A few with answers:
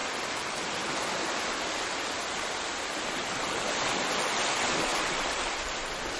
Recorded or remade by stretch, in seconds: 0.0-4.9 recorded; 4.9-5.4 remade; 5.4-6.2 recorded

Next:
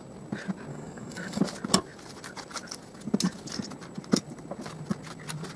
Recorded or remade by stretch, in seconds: 0.0-0.7 recorded; 0.7-1.4 remade; 1.4-5.6 recorded

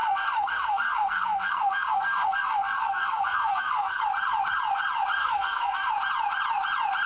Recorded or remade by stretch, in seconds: 0.0-4.0 remade; 4.0-5.2 recorded; 5.2-5.9 remade; 5.9-7.1 recorded

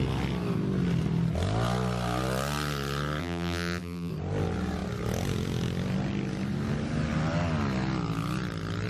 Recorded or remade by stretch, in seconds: 0.0-3.2 recorded; 3.2-4.1 remade; 4.1-8.9 recorded

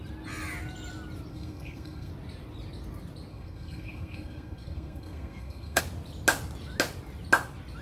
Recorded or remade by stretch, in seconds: 0.0-1.3 recorded; 1.3-2.1 remade; 2.1-3.3 recorded; 3.3-5.8 remade; 5.8-7.8 recorded